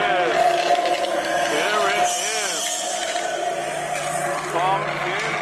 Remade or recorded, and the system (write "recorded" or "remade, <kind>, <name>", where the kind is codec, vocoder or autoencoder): recorded